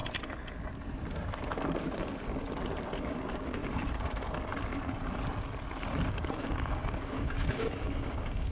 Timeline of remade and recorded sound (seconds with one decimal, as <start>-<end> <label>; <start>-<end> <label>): 0.0-3.0 recorded; 3.0-3.6 remade; 3.6-6.1 recorded; 6.1-8.5 remade